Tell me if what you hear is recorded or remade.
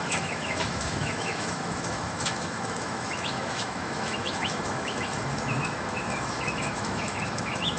remade